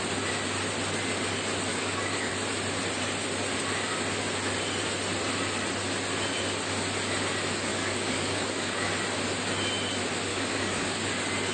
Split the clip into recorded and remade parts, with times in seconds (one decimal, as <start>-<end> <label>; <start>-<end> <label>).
0.0-1.7 recorded; 1.7-2.3 remade; 2.3-7.7 recorded; 7.7-8.9 remade; 8.9-10.3 recorded; 10.3-11.0 remade; 11.0-11.5 recorded